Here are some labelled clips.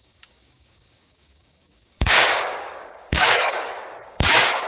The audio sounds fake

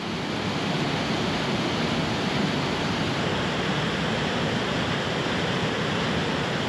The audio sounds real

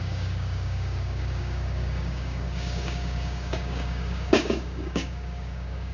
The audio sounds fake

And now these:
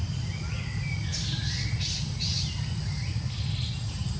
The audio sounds real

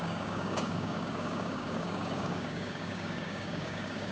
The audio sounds fake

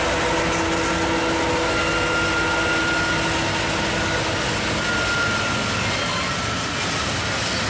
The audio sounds real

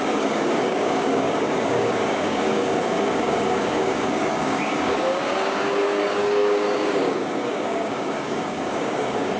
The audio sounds fake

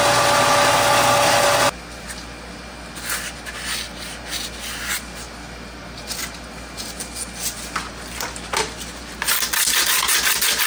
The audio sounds real